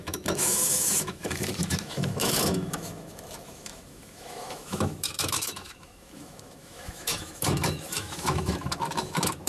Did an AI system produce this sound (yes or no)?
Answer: yes